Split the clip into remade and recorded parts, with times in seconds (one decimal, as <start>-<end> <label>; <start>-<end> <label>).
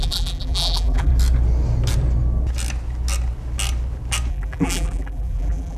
0.0-1.1 remade; 1.1-4.3 recorded; 4.3-5.8 remade